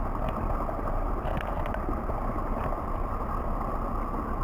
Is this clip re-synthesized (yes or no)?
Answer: no